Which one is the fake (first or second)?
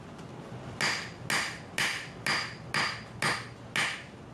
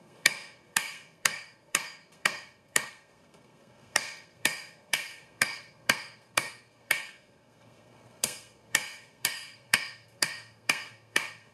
second